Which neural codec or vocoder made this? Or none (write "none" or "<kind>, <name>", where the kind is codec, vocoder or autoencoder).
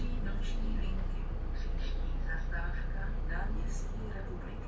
none